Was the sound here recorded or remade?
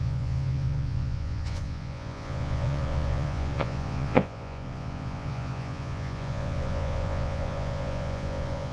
remade